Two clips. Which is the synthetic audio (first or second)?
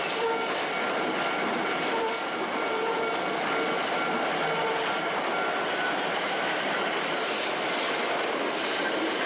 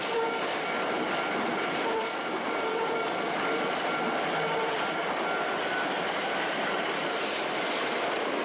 second